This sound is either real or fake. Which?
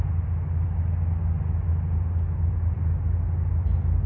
real